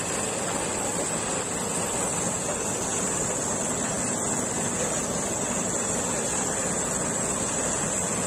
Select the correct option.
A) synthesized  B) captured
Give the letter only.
B